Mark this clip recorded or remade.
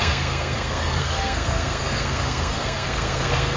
remade